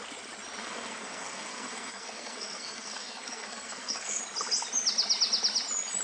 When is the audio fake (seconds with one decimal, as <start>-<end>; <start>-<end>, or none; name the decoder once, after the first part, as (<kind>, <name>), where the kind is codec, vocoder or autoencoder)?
0.6-4.2 (codec, SNAC)